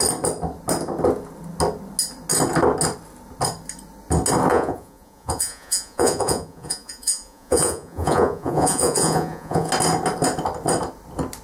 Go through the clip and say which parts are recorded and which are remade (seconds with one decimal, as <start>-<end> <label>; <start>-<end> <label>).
0.0-4.5 recorded; 4.5-9.7 remade; 9.7-11.4 recorded